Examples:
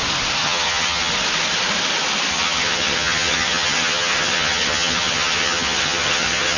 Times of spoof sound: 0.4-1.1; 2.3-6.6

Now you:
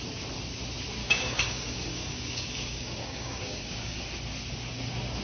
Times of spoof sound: 1.0-4.0

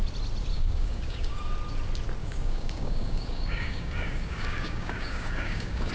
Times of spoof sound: 0.5-1.4; 2.2-5.9

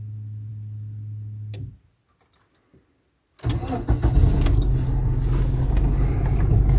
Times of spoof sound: none

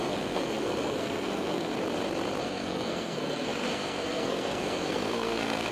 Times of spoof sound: 0.0-1.7; 2.4-5.7